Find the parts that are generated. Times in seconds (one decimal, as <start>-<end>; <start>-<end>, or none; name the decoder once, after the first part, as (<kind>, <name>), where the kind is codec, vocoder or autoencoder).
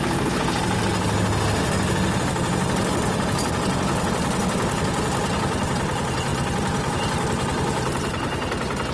none